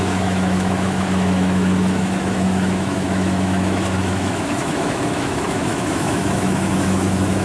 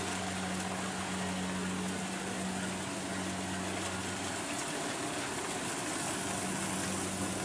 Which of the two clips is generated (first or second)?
first